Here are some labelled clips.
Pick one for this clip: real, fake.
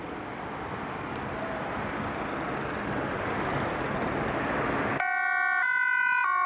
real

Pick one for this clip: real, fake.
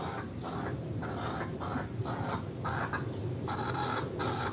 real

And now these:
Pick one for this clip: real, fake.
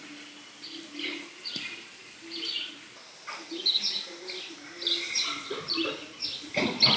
real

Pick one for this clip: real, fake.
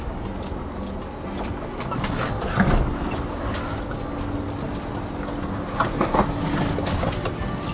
real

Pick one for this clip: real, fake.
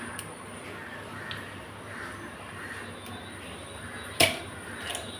real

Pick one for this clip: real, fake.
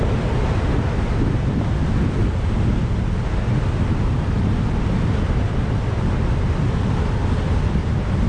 real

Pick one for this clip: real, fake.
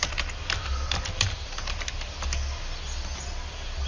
real